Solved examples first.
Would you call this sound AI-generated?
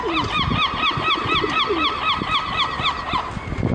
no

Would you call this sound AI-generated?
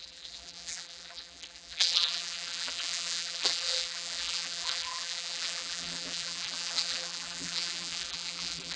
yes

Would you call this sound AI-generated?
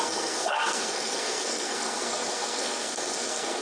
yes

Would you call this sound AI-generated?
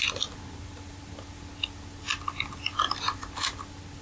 no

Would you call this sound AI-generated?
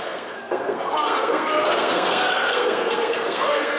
yes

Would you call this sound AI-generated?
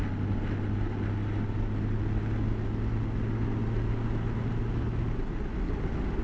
no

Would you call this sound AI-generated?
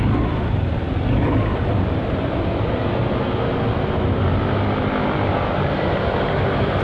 no